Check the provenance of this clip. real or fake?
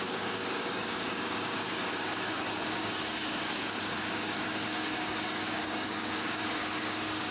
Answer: fake